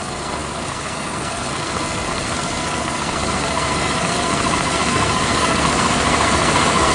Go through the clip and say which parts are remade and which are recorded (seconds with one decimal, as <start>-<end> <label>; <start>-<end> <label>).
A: 0.0-6.9 remade